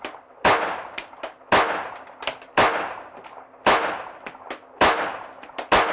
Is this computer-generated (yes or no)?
no